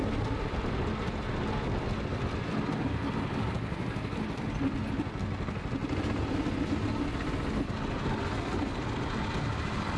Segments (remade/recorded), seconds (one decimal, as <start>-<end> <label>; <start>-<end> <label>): 0.0-10.0 recorded